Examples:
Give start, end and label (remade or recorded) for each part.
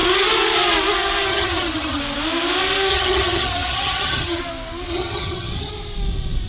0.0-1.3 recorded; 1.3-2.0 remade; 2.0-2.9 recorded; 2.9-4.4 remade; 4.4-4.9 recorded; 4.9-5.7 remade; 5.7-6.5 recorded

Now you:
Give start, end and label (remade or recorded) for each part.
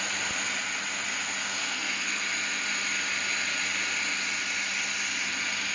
0.0-1.6 recorded; 1.6-2.2 remade; 2.2-5.7 recorded